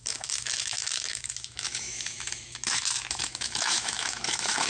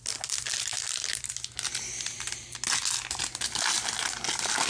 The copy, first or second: first